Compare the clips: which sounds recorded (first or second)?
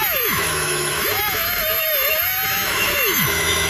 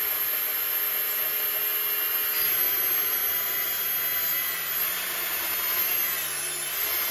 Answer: second